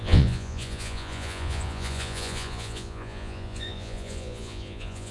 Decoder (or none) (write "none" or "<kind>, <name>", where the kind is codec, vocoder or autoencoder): vocoder, Vocos